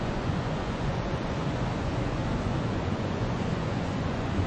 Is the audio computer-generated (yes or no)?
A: yes